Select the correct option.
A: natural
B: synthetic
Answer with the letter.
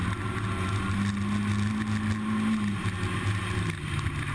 A